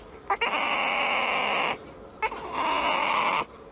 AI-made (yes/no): no